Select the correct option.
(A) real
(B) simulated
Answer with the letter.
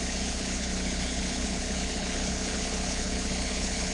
B